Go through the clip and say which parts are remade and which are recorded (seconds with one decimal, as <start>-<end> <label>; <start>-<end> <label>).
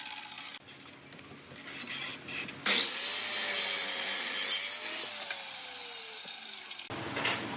0.0-7.6 recorded